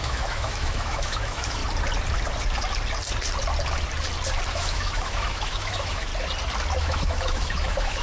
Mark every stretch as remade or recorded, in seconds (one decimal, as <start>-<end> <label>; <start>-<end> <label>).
0.0-1.6 remade; 1.6-4.5 recorded; 4.5-6.1 remade; 6.1-6.8 recorded; 6.8-8.0 remade